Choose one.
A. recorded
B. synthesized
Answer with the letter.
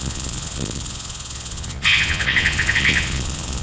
B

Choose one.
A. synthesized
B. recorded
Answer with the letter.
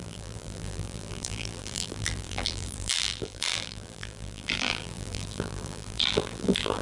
A